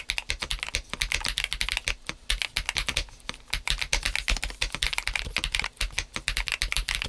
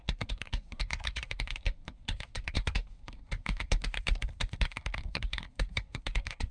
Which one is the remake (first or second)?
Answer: second